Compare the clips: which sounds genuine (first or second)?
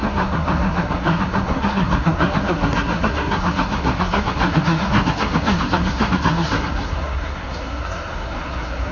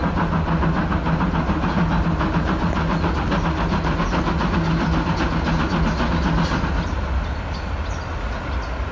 second